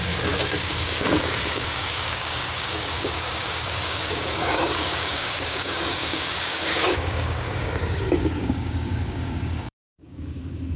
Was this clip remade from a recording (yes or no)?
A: yes